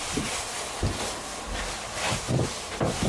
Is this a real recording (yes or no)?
yes